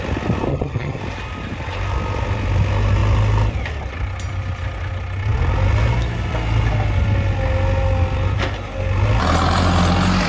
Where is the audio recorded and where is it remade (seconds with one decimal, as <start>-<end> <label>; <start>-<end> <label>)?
0.0-0.5 recorded; 0.5-1.0 remade; 1.0-10.3 recorded